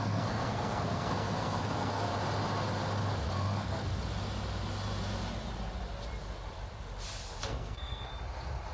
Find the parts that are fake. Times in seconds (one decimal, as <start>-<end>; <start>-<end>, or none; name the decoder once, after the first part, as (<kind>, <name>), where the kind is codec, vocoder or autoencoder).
0.0-2.1 (codec, SNAC); 3.3-3.9; 7.4-8.1